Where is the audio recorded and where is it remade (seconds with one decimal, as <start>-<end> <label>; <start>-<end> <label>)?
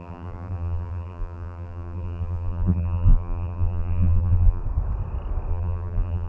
0.0-4.6 remade; 4.6-5.5 recorded; 5.5-6.3 remade